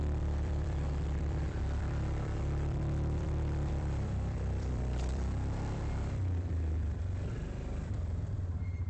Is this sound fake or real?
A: fake